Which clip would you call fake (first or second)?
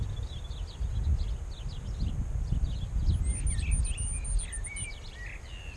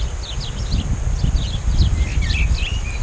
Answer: second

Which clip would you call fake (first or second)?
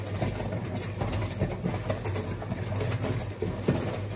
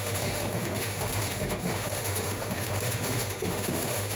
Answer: second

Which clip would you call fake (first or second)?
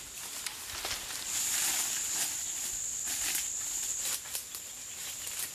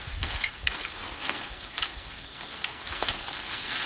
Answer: second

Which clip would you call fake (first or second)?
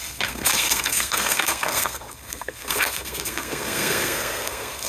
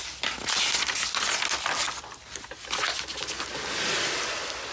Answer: first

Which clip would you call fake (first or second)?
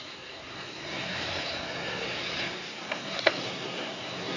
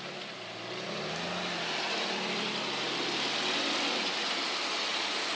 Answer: first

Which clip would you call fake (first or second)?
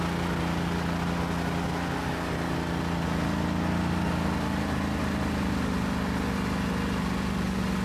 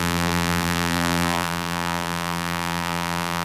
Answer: second